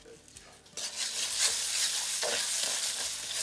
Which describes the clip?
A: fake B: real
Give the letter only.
B